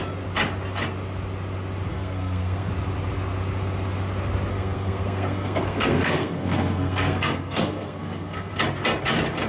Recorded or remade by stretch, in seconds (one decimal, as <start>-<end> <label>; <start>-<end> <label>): 0.0-1.9 recorded; 1.9-2.7 remade; 2.7-4.5 recorded; 4.5-8.5 remade; 8.5-9.5 recorded